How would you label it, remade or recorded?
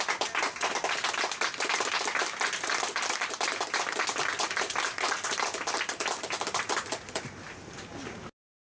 recorded